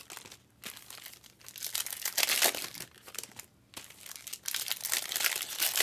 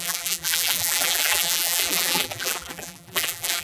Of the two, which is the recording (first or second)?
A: first